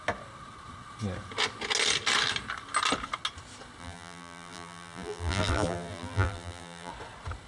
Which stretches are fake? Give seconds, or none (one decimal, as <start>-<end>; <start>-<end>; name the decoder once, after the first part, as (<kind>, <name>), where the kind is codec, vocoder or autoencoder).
3.8-6.9 (vocoder, BigVGAN v2)